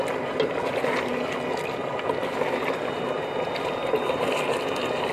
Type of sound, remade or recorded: recorded